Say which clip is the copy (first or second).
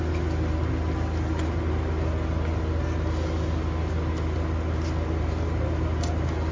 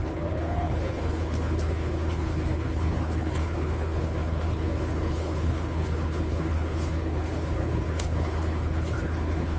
second